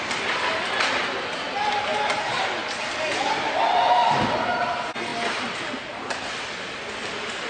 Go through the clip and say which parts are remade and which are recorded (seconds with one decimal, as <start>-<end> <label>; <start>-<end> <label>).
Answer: 0.0-7.5 recorded